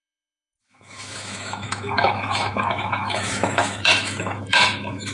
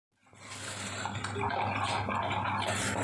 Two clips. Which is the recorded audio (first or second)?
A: second